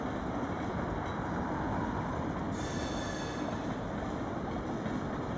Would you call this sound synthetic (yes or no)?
no